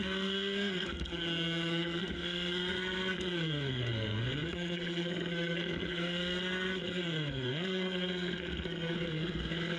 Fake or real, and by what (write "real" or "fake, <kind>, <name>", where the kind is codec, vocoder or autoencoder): fake, codec, SNAC